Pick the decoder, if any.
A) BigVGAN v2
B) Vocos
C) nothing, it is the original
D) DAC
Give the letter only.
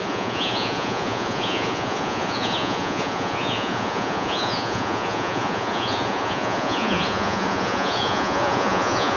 B